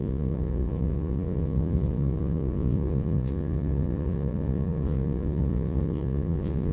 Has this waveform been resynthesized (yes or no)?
yes